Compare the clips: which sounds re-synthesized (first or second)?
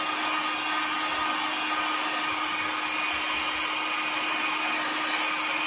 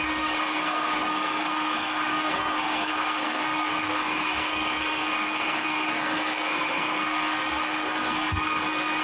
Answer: second